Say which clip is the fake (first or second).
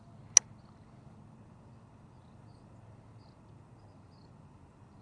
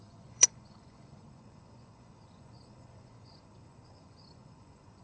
second